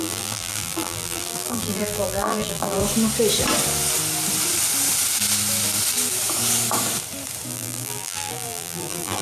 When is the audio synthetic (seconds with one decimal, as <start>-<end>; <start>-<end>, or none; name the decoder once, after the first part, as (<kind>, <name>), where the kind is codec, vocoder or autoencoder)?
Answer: 0.0-2.8 (vocoder, BigVGAN v2); 7.5-9.2